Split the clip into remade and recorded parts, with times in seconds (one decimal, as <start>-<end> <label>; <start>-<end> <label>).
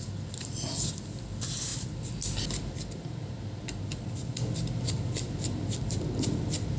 0.0-6.8 recorded